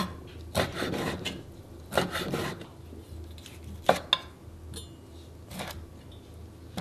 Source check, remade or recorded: recorded